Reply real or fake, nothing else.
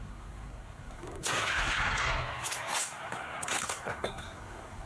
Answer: fake